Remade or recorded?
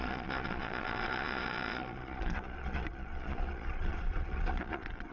remade